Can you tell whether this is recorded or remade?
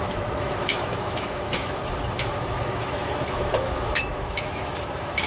remade